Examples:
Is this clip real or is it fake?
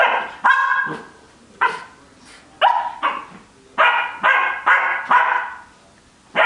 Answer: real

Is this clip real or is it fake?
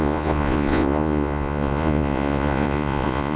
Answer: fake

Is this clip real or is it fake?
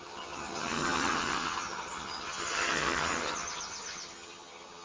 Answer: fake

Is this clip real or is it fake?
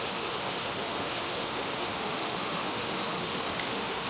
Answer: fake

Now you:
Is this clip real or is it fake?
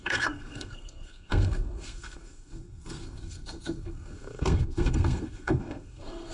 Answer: fake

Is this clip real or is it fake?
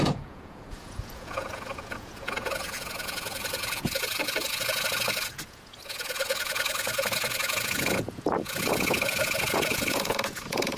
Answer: fake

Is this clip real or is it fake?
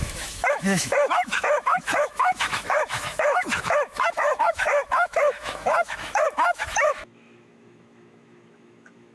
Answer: fake